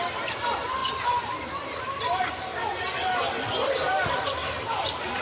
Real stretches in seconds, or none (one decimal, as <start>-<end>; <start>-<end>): 4.4-5.2